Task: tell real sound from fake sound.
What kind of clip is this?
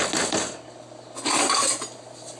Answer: real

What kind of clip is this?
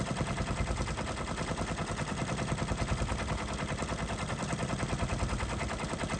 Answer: real